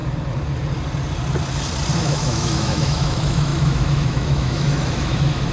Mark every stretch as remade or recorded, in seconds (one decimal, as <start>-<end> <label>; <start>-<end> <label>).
0.0-2.0 recorded; 2.0-5.5 remade